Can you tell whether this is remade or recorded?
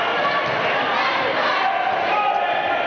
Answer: recorded